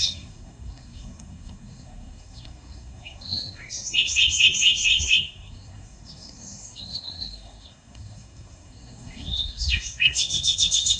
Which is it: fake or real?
fake